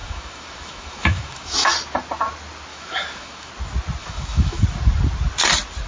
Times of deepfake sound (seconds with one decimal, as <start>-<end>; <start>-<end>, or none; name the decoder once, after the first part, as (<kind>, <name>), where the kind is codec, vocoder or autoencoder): 0.0-1.7 (autoencoder, DAC-VAE); 2.7-3.5; 4.0-4.6